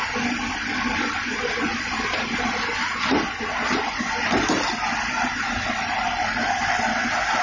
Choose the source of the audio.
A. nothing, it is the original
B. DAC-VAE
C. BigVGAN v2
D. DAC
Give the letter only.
A